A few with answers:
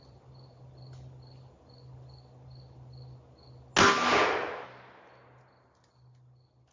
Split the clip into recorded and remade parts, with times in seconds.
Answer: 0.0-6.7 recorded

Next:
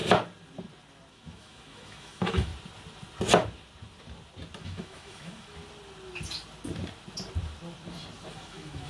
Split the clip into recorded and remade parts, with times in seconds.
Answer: 0.0-1.1 recorded; 1.1-2.5 remade; 2.5-4.6 recorded; 4.6-5.6 remade; 5.6-8.3 recorded; 8.3-8.9 remade

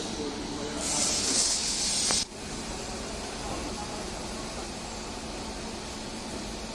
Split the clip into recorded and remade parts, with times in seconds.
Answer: 0.0-1.2 recorded; 1.2-1.8 remade; 1.8-6.7 recorded